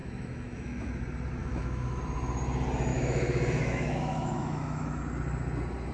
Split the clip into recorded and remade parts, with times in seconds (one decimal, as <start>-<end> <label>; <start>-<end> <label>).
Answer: 0.0-0.9 remade; 0.9-1.4 recorded; 1.4-2.0 remade; 2.0-2.9 recorded; 2.9-5.0 remade; 5.0-5.9 recorded